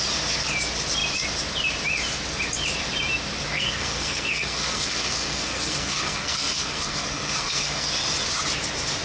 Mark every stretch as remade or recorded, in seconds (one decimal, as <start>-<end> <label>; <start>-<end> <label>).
0.0-3.5 recorded; 3.5-8.0 remade; 8.0-9.0 recorded